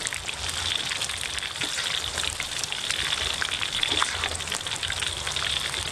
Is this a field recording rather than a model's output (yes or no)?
yes